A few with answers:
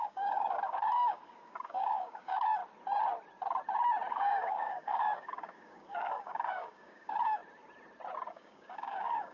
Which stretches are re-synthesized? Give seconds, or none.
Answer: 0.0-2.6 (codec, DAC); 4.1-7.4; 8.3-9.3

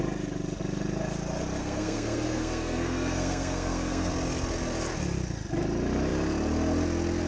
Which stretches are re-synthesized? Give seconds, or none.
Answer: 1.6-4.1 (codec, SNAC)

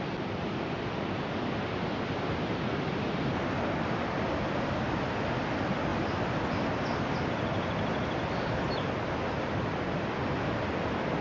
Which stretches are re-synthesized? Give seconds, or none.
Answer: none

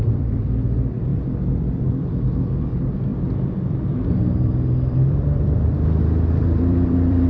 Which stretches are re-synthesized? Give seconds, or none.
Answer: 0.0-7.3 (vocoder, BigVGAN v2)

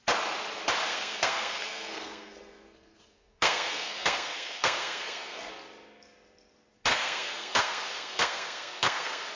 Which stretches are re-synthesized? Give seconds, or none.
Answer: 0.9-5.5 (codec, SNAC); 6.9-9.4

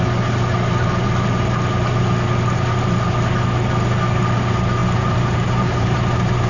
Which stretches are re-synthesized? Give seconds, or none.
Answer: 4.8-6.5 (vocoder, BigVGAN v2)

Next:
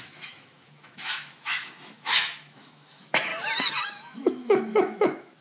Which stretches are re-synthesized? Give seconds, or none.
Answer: 0.0-3.3 (autoencoder, DAC-VAE); 3.8-5.4